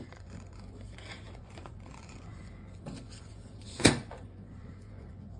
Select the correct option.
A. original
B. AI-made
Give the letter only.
B